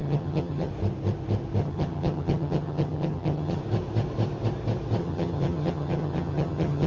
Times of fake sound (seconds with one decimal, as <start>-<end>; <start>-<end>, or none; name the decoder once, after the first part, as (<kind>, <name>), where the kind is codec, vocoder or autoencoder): 0.0-0.7 (vocoder, HiFi-GAN); 1.6-3.6; 5.0-6.9